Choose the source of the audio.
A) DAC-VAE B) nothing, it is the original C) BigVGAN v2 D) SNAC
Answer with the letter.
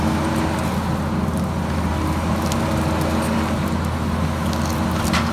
B